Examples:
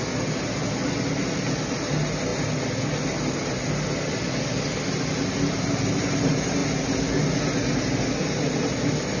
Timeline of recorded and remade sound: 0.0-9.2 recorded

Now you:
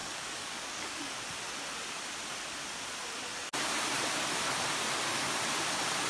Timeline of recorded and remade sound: 0.0-1.1 remade; 1.1-6.1 recorded